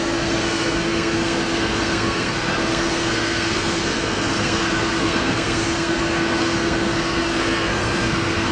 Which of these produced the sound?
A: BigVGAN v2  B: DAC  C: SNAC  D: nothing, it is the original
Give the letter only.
C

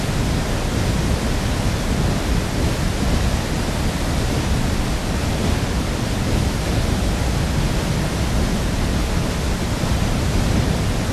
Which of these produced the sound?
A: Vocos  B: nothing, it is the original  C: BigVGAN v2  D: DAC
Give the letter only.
B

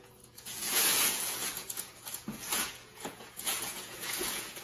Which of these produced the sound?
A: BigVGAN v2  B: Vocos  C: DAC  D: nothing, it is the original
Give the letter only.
B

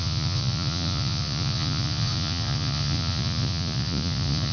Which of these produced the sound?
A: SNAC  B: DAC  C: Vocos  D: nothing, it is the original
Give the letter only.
C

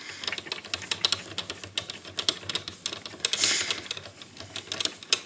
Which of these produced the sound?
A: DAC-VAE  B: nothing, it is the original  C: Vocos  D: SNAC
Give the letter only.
B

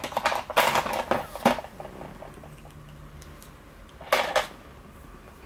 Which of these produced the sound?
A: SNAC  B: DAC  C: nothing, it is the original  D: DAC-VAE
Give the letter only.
C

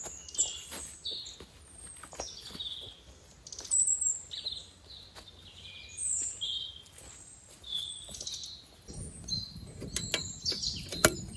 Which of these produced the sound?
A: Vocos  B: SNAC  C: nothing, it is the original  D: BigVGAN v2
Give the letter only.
C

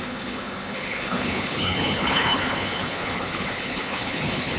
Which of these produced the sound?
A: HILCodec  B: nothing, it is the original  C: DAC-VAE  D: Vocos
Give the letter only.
A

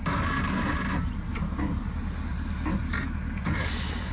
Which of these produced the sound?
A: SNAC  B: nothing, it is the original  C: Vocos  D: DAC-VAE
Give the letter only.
B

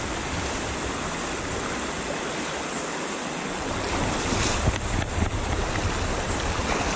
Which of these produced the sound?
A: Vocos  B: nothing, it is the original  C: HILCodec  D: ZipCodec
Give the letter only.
B